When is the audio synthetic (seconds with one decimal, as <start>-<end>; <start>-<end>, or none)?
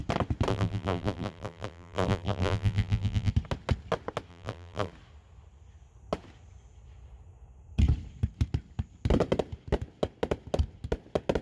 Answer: 0.5-3.3; 4.3-4.9